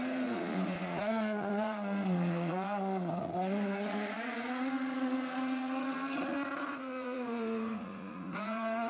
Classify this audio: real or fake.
fake